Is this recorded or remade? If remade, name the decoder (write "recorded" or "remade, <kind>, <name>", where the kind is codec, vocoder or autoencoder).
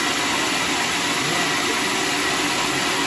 recorded